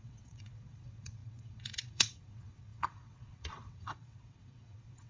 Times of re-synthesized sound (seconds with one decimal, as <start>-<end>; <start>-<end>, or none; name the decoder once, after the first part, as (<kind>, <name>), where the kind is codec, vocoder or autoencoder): 0.0-5.1 (vocoder, WaveNeXt)

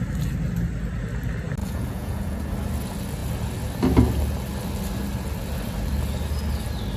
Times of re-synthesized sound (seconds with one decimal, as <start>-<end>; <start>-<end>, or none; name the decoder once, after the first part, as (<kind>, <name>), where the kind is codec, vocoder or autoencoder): 1.6-2.4 (vocoder, Vocos)

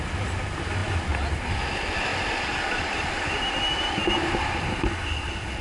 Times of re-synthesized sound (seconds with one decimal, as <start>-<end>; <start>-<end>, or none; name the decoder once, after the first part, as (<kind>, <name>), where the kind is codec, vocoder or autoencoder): none

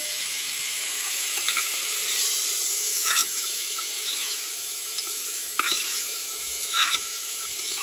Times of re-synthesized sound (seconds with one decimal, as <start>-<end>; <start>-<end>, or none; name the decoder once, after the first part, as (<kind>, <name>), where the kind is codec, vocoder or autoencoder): 0.0-2.0 (autoencoder, DAC-VAE); 2.7-7.8

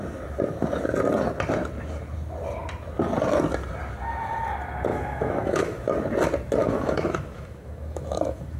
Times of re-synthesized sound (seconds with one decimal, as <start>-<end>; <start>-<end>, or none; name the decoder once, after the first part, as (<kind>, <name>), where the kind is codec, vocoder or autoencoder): 4.9-5.8 (autoencoder, DAC-VAE); 6.6-8.6

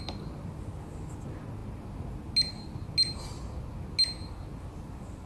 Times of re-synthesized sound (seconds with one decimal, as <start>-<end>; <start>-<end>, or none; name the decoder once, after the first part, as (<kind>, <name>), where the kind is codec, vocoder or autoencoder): none